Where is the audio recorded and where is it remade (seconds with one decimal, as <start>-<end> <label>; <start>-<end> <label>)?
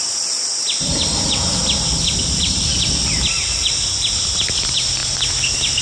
0.0-5.8 recorded